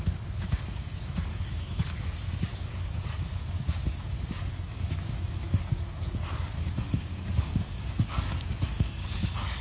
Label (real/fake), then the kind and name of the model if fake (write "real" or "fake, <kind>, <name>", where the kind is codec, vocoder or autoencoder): fake, codec, DAC